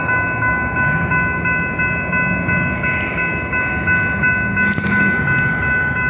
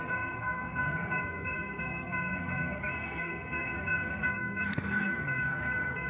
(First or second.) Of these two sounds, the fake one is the second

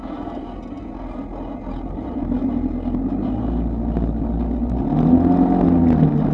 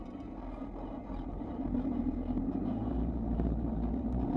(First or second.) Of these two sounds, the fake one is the second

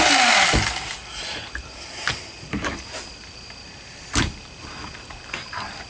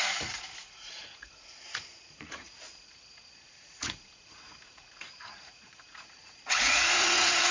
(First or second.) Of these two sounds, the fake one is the second